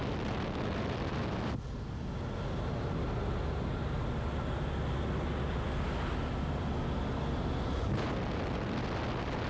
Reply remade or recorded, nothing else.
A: recorded